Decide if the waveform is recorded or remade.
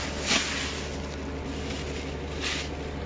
recorded